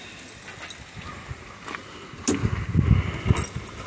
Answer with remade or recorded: recorded